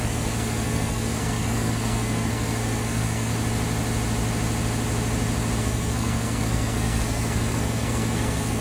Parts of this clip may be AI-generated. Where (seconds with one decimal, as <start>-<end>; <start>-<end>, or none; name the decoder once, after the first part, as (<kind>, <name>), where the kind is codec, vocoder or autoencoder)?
0.0-3.3 (codec, SNAC); 5.6-8.6